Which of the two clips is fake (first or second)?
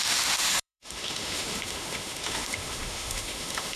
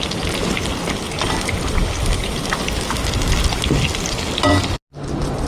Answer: first